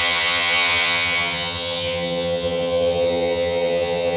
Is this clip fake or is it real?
fake